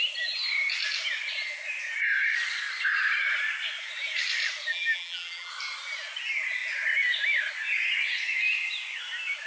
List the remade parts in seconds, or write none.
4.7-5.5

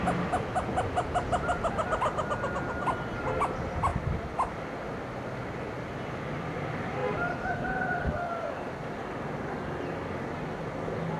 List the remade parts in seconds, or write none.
none

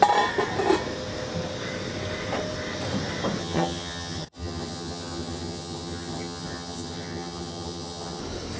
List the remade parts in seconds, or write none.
3.4-8.2

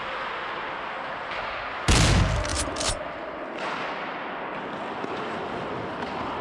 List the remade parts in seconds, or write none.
2.5-3.5

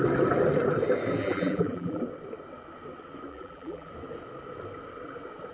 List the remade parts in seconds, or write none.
1.2-2.0; 3.3-3.9

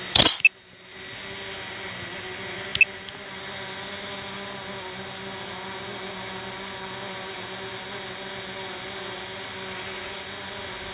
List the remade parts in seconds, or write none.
none

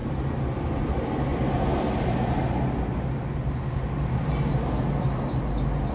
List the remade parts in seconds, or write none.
none